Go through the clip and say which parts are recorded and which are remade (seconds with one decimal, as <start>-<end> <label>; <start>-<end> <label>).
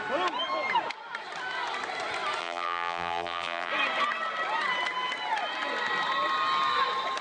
0.0-2.4 recorded; 2.4-3.7 remade; 3.7-7.2 recorded